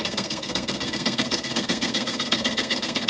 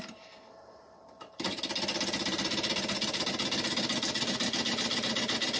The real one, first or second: second